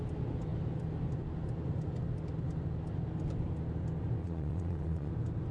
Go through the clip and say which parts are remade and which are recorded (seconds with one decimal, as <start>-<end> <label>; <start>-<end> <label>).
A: 0.0-4.2 recorded; 4.2-5.1 remade; 5.1-5.5 recorded